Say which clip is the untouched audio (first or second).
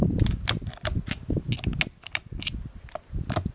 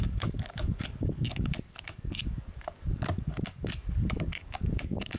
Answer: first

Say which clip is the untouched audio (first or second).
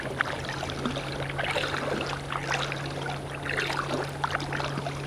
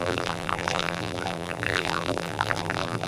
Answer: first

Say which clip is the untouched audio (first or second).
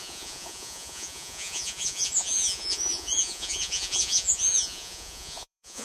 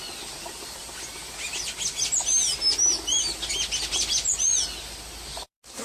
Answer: second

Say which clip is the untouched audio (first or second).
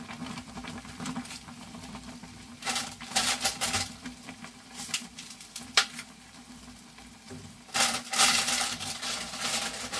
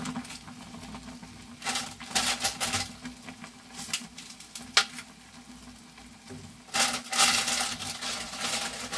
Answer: second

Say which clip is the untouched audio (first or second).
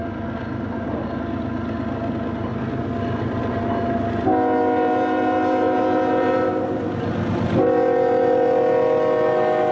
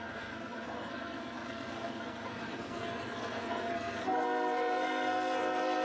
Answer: first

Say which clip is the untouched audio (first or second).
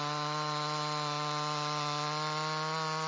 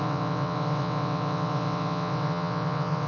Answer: first